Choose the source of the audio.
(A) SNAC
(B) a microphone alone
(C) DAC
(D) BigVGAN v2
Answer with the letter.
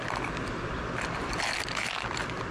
B